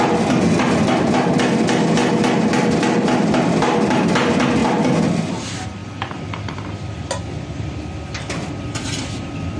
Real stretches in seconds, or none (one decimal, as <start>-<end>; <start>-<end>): 0.0-9.6